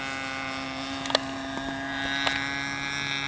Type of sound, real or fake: real